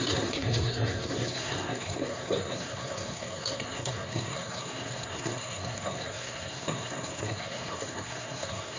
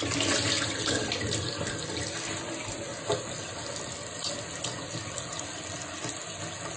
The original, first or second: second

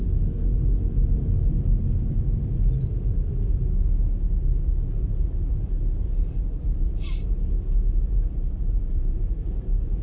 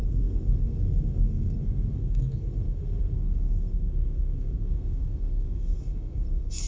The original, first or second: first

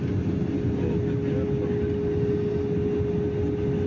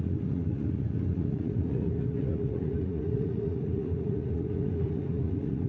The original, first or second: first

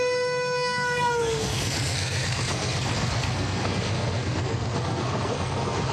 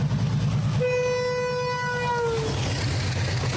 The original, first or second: second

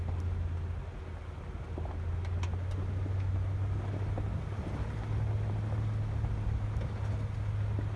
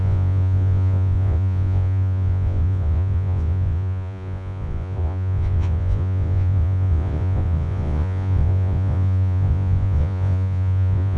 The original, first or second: first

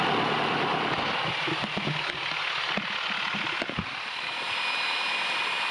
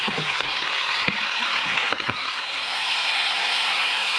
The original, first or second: first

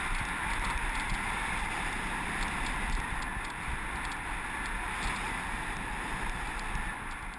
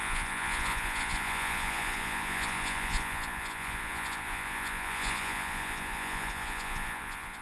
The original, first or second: first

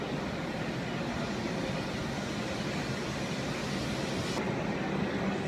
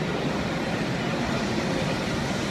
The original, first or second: first